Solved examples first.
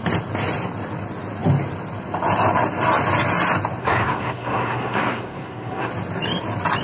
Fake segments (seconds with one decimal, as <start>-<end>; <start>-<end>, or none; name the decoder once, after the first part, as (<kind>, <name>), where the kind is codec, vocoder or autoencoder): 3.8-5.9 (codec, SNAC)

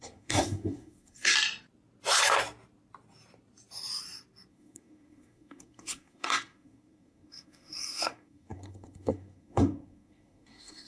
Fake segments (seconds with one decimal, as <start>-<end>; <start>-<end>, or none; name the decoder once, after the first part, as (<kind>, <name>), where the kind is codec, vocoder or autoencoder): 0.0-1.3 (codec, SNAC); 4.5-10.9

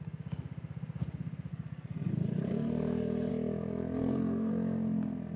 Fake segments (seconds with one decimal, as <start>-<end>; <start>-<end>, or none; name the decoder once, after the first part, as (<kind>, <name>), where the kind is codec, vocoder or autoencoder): 1.5-2.1 (codec, SNAC); 2.5-3.3; 4.0-4.5

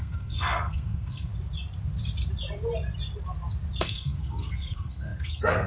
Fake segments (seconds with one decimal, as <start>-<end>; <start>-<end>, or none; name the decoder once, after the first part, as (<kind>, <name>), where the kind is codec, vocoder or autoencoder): 0.0-1.3 (codec, SNAC); 3.8-5.7